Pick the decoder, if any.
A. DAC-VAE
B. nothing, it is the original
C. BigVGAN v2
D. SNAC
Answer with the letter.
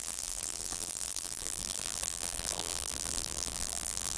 C